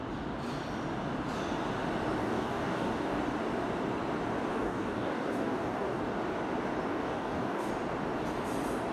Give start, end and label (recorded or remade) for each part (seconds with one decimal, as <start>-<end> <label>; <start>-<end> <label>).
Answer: 0.0-2.2 recorded; 2.2-3.2 remade; 3.2-4.5 recorded; 4.5-6.0 remade; 6.0-6.9 recorded; 6.9-7.7 remade; 7.7-8.9 recorded